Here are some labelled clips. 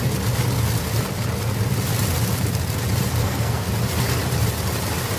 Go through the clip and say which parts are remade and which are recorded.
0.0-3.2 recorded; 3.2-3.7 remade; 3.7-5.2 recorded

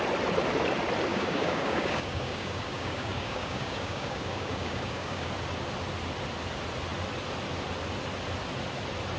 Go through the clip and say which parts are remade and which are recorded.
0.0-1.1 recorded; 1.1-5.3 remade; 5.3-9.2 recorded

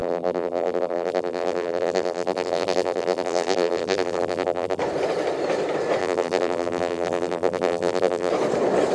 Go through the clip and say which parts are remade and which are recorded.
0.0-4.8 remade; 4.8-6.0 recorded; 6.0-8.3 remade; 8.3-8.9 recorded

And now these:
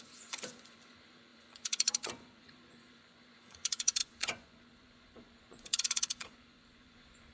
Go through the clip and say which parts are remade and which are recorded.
0.0-7.3 remade